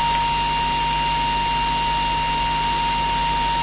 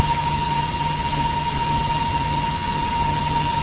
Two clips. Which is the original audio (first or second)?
first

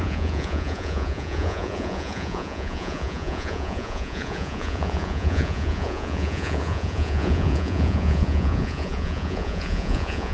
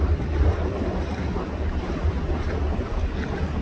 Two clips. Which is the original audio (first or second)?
second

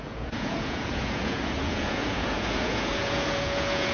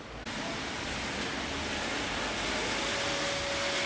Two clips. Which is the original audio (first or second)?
second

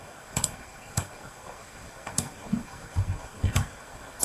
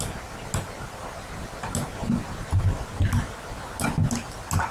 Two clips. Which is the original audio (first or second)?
second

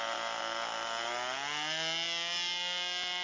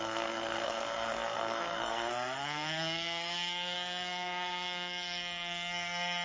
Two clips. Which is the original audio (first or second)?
first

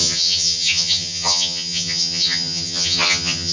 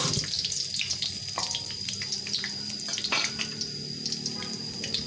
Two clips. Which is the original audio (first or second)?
second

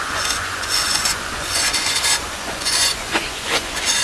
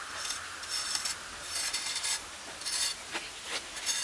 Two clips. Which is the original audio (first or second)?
second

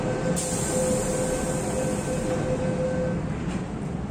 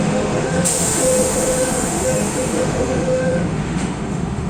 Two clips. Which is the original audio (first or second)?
first